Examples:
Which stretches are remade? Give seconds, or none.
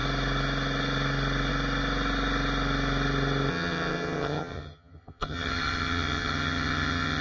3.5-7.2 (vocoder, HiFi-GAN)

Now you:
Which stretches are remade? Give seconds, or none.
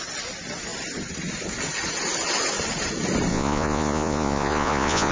3.3-5.1 (vocoder, Vocos)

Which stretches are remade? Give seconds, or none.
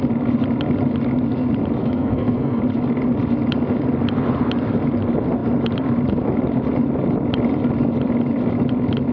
1.8-2.6 (codec, SNAC)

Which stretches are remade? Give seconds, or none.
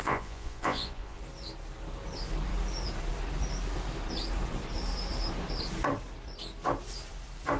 0.0-1.2 (vocoder, Vocos)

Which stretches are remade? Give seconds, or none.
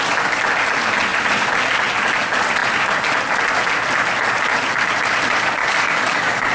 5.6-6.5 (codec, DAC)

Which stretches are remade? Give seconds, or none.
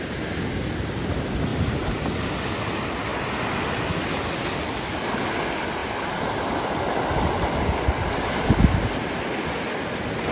1.5-2.3 (vocoder, BigVGAN v2)